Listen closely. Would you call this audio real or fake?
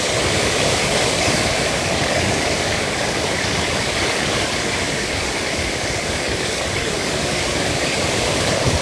fake